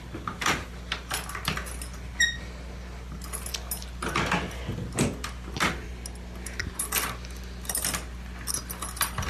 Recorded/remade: recorded